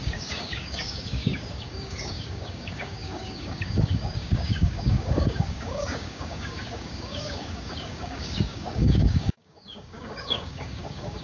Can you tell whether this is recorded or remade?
remade